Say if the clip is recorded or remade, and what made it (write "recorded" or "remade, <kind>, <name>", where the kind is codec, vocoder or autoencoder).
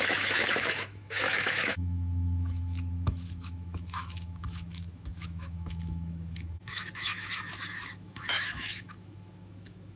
remade, autoencoder, DAC-VAE